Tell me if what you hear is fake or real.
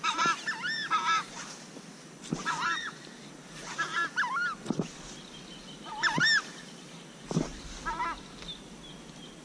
real